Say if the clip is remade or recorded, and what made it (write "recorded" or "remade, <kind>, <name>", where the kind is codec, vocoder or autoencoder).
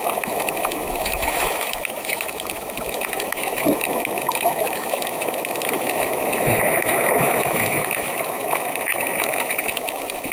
remade, autoencoder, DAC-VAE